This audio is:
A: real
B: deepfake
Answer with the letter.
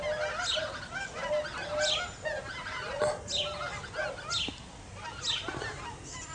A